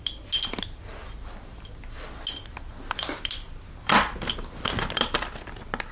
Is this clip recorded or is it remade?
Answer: recorded